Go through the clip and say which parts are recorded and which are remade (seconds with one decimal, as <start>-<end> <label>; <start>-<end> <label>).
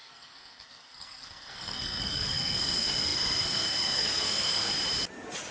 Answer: 0.0-4.7 remade; 4.7-5.5 recorded